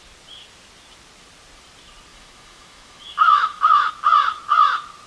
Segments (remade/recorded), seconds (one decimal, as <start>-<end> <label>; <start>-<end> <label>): 0.0-2.1 recorded; 2.1-3.9 remade; 3.9-5.1 recorded